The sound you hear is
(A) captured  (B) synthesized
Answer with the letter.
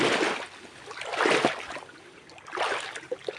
A